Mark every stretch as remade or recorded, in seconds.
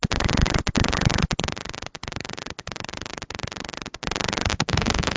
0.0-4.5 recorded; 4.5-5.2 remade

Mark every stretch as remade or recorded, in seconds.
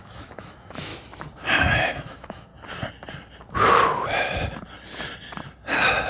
0.0-0.9 remade; 0.9-1.6 recorded; 1.6-2.5 remade; 2.5-6.1 recorded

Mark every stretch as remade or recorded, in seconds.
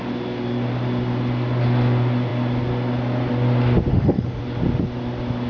0.0-3.9 recorded; 3.9-4.4 remade; 4.4-5.5 recorded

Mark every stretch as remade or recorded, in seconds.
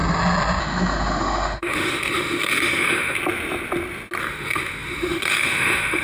0.0-0.6 recorded; 0.6-3.2 remade; 3.2-4.2 recorded; 4.2-6.0 remade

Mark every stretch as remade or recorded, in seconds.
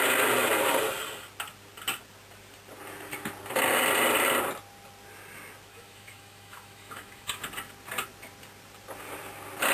0.0-5.7 recorded; 5.7-7.4 remade; 7.4-9.7 recorded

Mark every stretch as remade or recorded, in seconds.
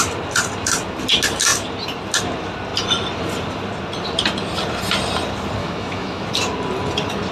0.0-5.6 recorded; 5.6-6.2 remade; 6.2-7.3 recorded